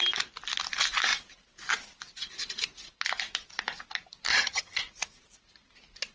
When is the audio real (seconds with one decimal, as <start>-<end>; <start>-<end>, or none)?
0.0-4.3; 4.8-6.1